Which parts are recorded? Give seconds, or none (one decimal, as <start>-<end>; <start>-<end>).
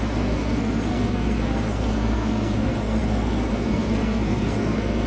none